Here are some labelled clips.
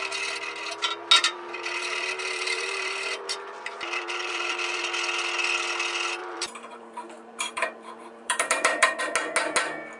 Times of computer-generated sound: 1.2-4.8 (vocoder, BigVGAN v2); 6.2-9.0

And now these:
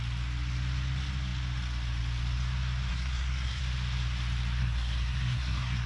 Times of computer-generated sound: 2.9-3.6 (codec, SNAC); 4.6-5.9

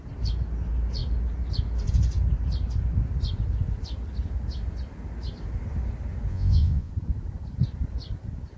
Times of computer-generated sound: 6.3-6.9 (vocoder, Vocos)